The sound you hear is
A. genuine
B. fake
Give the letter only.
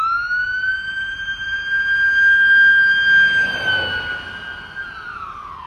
A